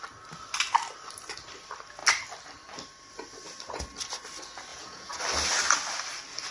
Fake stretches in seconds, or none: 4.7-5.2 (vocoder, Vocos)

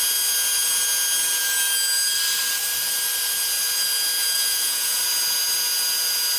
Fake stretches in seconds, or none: 4.2-5.0 (vocoder, Vocos)